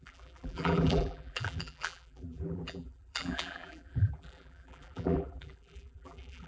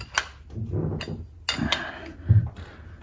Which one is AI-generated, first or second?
first